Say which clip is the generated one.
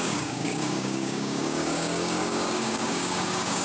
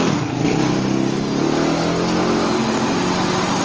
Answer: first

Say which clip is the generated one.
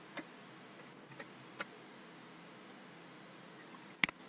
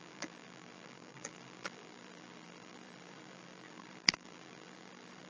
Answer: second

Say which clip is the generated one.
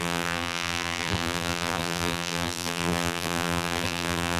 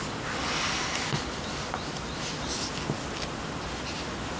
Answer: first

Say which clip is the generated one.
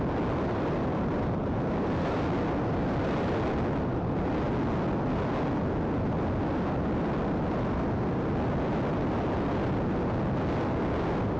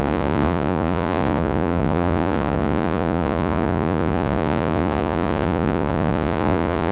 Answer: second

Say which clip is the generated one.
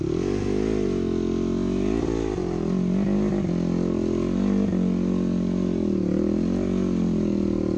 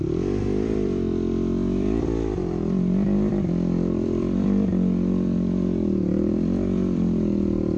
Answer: second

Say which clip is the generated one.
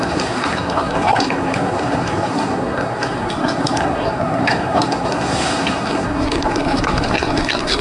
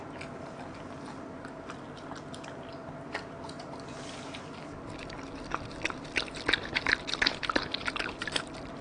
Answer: first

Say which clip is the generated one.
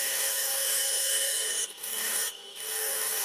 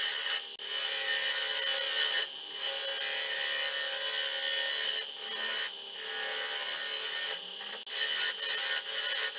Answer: first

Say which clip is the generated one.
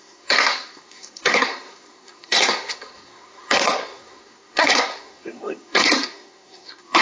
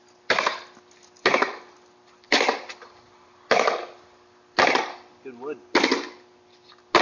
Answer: first